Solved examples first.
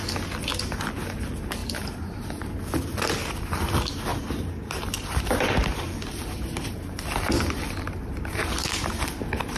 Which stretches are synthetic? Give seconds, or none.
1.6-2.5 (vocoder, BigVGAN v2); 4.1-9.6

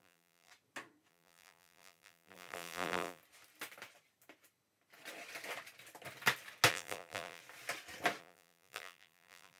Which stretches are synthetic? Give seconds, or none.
0.0-0.5 (vocoder, BigVGAN v2); 1.1-3.2; 6.7-7.4; 8.2-9.6